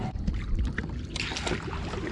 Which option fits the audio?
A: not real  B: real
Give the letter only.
B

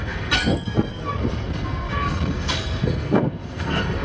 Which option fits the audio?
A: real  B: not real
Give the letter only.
B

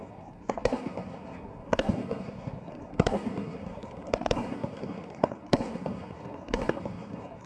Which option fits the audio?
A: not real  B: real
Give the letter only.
A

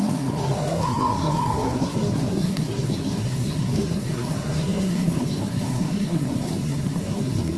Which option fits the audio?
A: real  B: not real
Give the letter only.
B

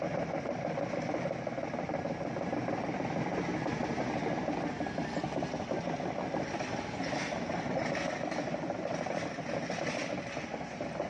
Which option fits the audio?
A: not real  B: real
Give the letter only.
B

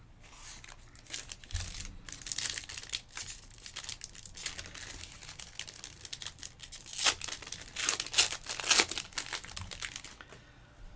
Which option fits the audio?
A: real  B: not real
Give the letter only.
A